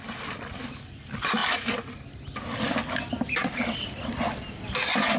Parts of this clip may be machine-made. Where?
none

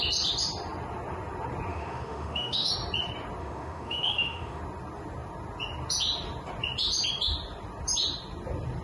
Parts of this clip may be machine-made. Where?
1.7-2.7; 3.4-4.6

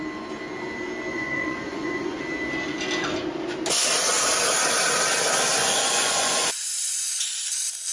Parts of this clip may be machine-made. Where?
1.1-2.2; 5.6-7.1

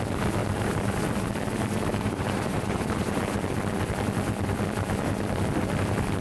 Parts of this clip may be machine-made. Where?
0.4-0.9; 1.9-3.2